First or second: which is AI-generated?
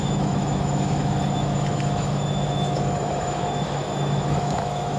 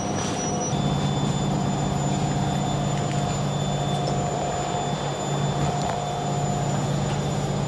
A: first